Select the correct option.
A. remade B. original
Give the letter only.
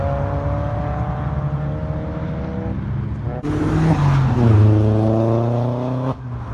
B